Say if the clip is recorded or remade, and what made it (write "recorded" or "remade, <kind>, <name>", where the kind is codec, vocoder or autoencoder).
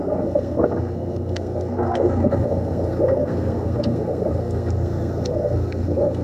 remade, codec, SNAC